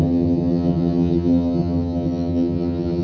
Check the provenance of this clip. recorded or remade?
remade